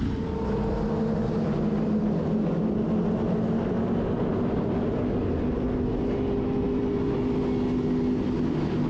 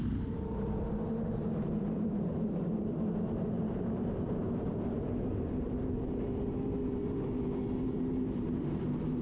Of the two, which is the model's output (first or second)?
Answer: second